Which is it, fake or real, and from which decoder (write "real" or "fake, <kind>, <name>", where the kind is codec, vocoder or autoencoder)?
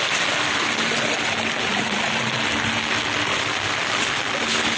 real